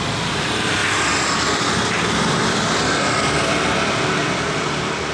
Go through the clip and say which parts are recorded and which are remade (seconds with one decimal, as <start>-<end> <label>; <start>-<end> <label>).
0.0-0.8 remade; 0.8-3.9 recorded; 3.9-5.1 remade